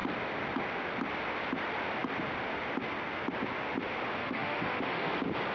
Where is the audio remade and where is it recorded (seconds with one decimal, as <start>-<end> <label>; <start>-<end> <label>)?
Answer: 0.0-4.2 recorded; 4.2-5.1 remade; 5.1-5.5 recorded